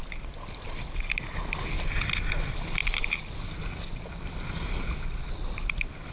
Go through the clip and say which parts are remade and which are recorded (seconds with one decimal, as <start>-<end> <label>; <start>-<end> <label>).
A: 0.0-6.1 recorded